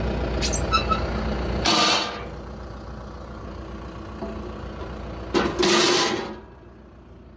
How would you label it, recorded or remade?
recorded